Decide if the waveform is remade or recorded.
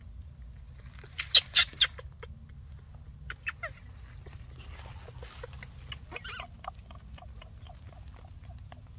recorded